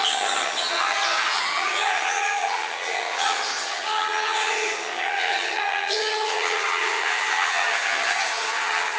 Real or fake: fake